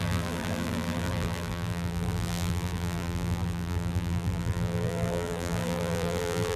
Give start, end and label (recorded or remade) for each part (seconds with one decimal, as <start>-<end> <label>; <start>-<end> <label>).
0.0-6.6 remade